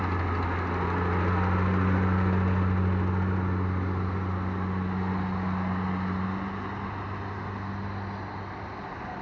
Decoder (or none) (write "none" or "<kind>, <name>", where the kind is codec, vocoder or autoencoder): none